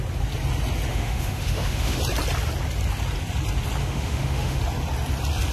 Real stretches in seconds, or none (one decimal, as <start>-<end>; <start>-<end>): 0.0-0.9; 2.0-3.8; 4.6-5.5